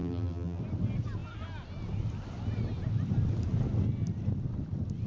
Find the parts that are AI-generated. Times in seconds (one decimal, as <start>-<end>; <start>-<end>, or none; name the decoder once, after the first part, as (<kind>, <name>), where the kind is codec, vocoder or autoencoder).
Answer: 0.0-0.6 (vocoder, BigVGAN v2)